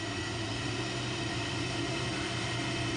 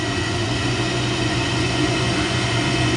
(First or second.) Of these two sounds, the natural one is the first